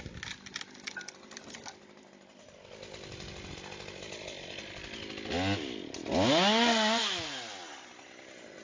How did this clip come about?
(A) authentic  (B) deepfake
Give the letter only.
A